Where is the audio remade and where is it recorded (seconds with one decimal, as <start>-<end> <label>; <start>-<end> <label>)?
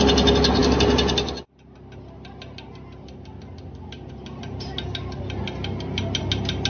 0.0-6.7 recorded